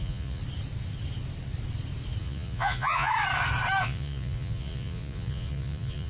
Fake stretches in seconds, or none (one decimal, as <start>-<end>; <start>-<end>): 0.0-0.4; 2.2-3.1; 3.8-6.1